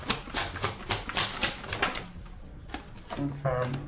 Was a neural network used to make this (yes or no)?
no